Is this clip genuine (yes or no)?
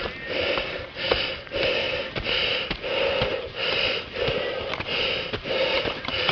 yes